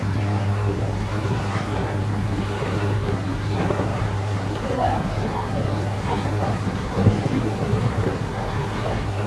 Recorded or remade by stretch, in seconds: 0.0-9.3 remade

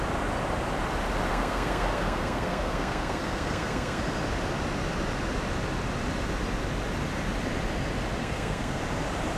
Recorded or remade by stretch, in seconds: 0.0-1.3 recorded; 1.3-4.0 remade; 4.0-8.2 recorded; 8.2-8.8 remade; 8.8-9.4 recorded

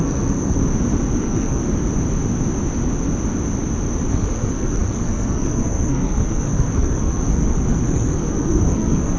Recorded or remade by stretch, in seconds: 0.0-0.6 remade; 0.6-1.2 recorded; 1.2-1.6 remade; 1.6-4.1 recorded; 4.1-9.2 remade